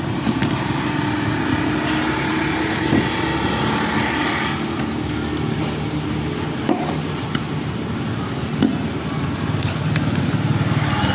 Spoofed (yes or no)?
no